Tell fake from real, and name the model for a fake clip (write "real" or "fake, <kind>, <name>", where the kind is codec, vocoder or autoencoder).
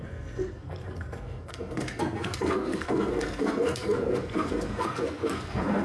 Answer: fake, codec, SNAC